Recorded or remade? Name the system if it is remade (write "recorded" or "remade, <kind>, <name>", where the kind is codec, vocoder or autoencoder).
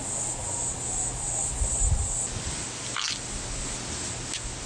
recorded